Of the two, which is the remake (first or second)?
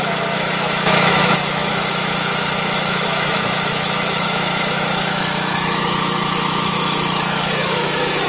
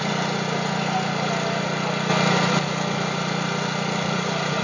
first